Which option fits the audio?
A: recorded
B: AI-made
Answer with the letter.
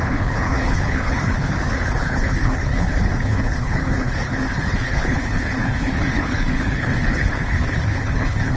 B